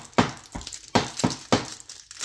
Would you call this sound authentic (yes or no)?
yes